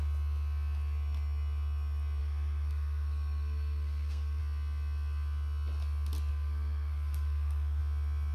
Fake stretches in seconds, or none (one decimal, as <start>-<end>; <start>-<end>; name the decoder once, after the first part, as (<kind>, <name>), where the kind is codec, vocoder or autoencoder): 2.2-4.4 (codec, SNAC); 6.3-7.8